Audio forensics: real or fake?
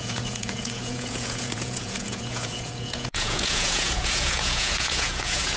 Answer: fake